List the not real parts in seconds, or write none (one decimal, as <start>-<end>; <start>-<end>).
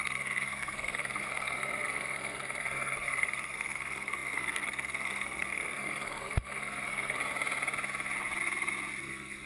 0.0-7.2; 9.0-9.5